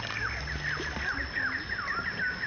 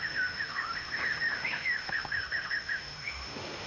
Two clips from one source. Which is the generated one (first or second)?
second